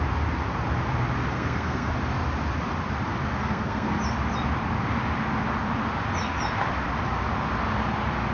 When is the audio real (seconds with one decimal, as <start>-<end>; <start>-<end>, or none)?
0.0-1.3; 1.9-3.4; 3.9-8.3